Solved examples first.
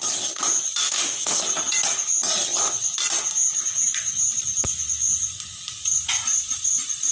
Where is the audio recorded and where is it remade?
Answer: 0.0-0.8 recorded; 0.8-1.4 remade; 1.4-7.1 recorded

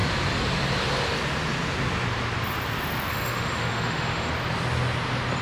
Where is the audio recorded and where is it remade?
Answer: 0.0-3.1 recorded; 3.1-4.3 remade; 4.3-5.4 recorded